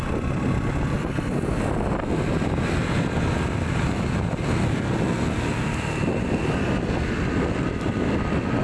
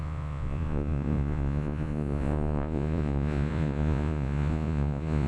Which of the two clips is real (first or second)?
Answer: first